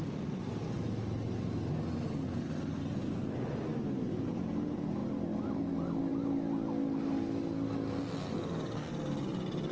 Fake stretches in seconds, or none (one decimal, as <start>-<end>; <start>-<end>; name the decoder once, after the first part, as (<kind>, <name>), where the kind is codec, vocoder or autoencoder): none